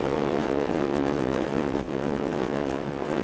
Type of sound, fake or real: fake